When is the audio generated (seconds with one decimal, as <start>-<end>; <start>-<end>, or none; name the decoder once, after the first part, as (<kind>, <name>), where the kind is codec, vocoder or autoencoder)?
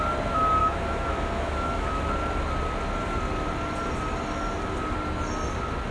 0.6-2.0 (autoencoder, DAC-VAE)